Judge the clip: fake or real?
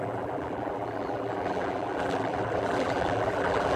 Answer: fake